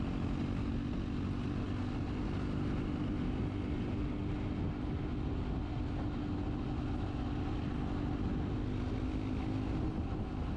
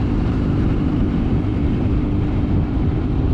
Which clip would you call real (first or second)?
first